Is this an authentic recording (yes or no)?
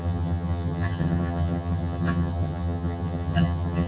no